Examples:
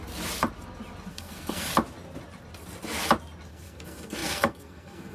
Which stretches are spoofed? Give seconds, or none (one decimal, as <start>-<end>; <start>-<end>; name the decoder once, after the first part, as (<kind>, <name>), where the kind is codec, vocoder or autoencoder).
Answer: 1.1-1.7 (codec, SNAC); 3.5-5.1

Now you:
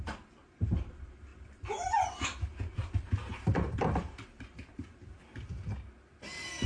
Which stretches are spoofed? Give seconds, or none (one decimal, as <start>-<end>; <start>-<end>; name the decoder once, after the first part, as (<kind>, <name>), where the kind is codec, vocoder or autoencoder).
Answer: 0.0-5.1 (vocoder, BigVGAN v2)

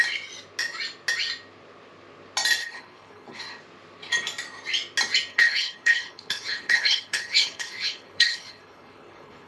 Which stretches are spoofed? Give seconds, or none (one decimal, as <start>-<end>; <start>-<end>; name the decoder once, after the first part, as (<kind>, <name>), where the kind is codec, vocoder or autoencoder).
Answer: 2.6-3.4 (codec, HILCodec); 5.3-9.5

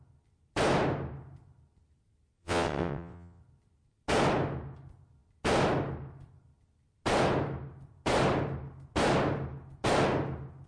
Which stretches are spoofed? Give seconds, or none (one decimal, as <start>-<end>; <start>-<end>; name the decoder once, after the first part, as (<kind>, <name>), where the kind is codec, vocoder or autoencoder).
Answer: 2.4-3.4 (vocoder, WaveNeXt)

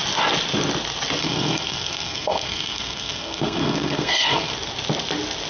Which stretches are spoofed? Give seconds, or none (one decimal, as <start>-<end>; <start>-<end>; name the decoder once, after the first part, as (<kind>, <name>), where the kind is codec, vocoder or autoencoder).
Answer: 1.2-4.5 (codec, SNAC)

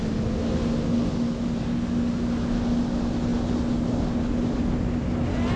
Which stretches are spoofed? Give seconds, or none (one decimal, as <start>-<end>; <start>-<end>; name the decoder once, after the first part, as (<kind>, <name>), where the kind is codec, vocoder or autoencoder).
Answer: none